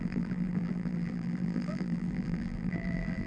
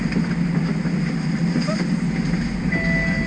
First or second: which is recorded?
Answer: second